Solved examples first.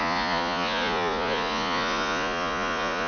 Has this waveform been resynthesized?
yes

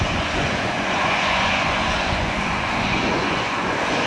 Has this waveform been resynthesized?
yes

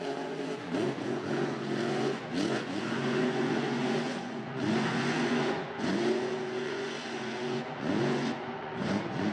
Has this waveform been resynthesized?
yes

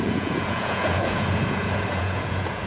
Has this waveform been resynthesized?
yes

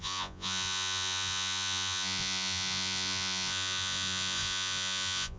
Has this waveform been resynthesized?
yes